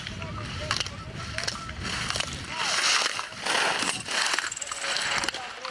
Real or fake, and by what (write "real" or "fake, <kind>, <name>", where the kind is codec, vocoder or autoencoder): real